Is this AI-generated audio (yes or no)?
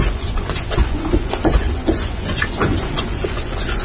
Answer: yes